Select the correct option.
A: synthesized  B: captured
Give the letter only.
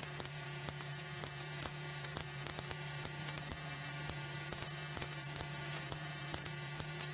A